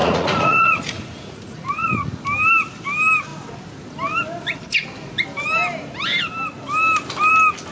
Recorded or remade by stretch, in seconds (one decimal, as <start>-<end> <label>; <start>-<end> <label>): 0.0-2.1 remade; 2.1-7.7 recorded